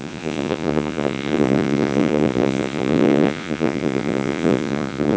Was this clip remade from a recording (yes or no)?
yes